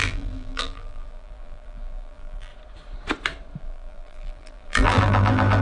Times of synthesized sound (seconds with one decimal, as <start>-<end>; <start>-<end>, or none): 0.0-2.5; 3.6-5.6